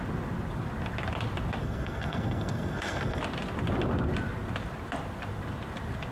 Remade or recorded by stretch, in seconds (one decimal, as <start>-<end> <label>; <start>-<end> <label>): 0.0-1.6 recorded; 1.6-3.2 remade; 3.2-6.1 recorded